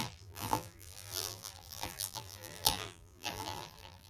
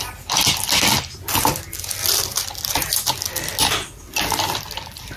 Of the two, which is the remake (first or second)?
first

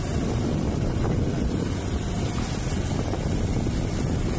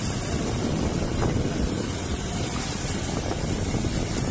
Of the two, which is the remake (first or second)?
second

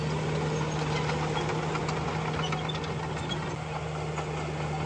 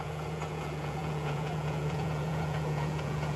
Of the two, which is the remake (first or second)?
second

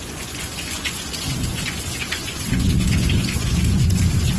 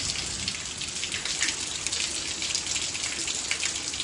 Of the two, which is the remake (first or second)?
first